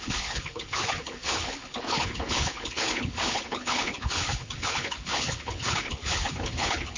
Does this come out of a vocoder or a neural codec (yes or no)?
yes